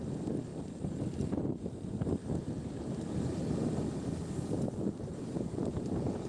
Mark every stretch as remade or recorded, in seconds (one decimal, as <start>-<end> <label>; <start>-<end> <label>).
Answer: 0.0-2.2 recorded; 2.2-6.3 remade